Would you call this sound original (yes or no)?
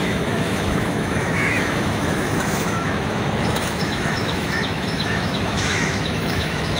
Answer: no